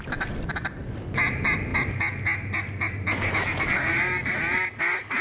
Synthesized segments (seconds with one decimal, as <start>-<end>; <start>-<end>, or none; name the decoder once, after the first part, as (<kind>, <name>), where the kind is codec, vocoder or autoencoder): none